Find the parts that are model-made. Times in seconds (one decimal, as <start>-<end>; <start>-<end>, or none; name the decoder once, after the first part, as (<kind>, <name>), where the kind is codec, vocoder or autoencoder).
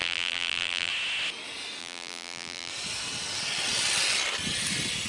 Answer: 0.0-0.9 (vocoder, BigVGAN v2); 1.8-2.7